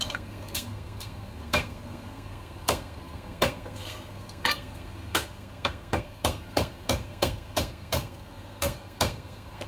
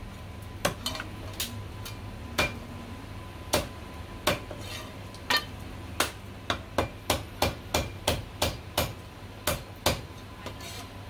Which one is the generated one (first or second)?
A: first